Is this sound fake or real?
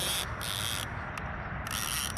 real